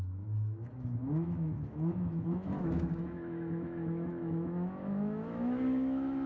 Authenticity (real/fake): fake